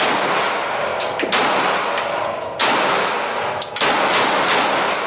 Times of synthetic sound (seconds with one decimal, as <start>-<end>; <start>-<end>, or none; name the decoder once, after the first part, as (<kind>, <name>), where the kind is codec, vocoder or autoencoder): none